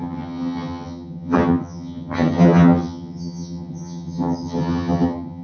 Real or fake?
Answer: fake